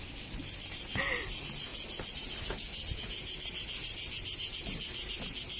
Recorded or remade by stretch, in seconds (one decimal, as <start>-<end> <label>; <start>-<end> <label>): 0.0-5.6 recorded